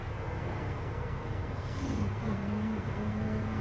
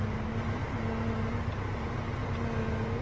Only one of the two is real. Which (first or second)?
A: second